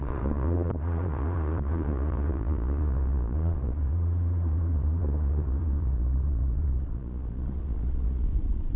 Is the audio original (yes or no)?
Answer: no